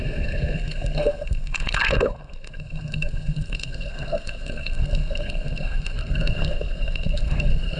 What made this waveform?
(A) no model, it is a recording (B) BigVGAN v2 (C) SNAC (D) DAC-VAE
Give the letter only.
C